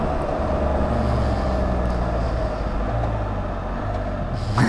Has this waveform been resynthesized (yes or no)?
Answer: no